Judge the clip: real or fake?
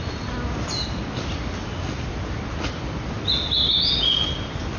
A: real